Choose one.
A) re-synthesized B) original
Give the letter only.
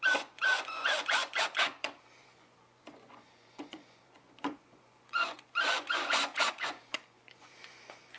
A